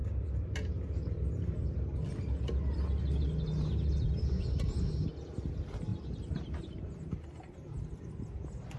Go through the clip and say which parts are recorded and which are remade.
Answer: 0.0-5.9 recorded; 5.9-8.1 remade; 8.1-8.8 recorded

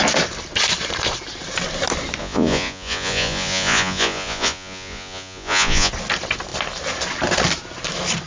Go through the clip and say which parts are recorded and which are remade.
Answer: 0.0-2.2 recorded; 2.2-5.9 remade; 5.9-8.3 recorded

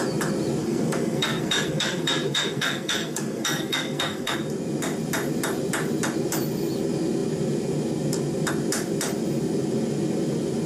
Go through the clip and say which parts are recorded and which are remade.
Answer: 0.0-0.6 recorded; 0.6-4.4 remade; 4.4-10.7 recorded

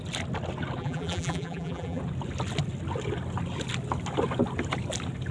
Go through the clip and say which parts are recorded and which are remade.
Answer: 0.0-0.8 recorded; 0.8-2.0 remade; 2.0-5.3 recorded